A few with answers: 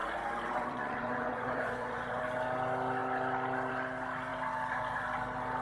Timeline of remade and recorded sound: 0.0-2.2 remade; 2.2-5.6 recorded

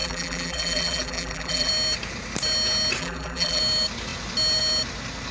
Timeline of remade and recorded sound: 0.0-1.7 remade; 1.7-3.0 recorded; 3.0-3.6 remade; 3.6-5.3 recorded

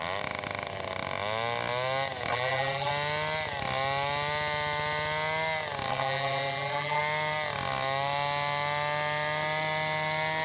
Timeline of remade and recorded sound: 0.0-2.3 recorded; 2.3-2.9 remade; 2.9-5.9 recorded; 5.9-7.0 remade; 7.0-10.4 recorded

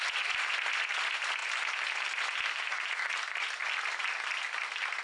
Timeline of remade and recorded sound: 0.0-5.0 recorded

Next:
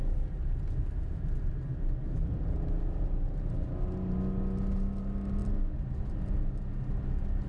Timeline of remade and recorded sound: 0.0-0.6 recorded; 0.6-1.5 remade; 1.5-5.4 recorded; 5.4-6.3 remade; 6.3-7.5 recorded

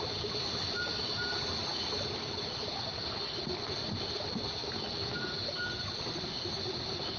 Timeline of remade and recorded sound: 0.0-7.2 recorded